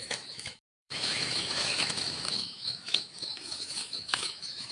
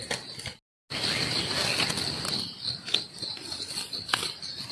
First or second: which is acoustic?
second